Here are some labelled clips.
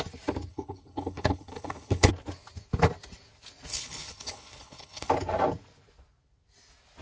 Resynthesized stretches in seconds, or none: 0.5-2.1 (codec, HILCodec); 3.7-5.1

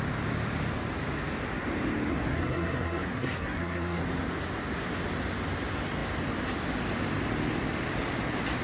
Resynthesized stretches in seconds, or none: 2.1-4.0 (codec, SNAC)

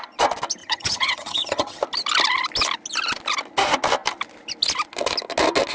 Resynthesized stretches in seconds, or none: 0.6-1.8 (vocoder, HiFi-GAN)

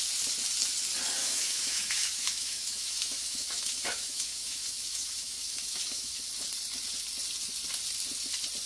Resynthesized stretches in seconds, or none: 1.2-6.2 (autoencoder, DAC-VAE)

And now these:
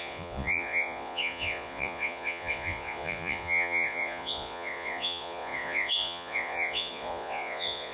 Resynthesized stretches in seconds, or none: 0.0-7.9 (vocoder, Vocos)

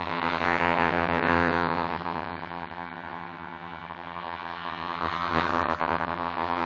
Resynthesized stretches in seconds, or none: 0.0-6.7 (vocoder, HiFi-GAN)